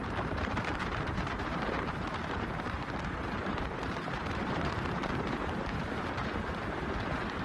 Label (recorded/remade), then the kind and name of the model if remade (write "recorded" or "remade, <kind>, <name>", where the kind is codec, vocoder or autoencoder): remade, vocoder, BigVGAN v2